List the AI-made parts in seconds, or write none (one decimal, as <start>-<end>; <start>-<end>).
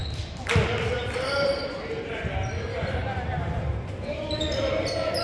0.0-0.5; 1.0-1.5